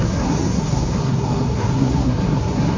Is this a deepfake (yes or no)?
yes